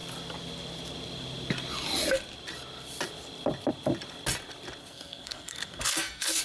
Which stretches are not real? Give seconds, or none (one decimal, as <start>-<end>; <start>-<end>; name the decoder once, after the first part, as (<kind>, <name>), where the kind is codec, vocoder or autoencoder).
4.8-6.4 (codec, SNAC)